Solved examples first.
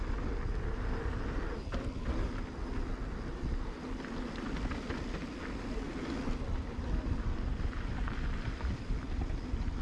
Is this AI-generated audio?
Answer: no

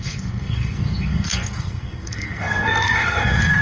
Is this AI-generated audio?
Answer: yes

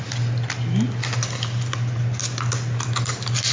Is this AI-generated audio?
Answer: no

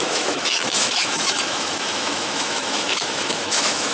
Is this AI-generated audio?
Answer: yes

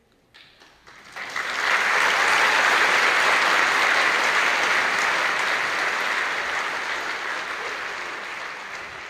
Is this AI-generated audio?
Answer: no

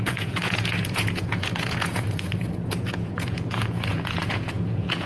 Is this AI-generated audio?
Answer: yes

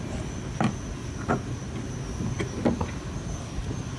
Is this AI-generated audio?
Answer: no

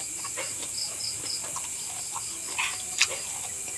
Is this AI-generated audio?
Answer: no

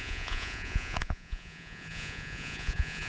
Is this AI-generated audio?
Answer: yes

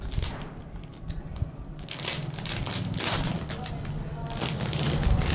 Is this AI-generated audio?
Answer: no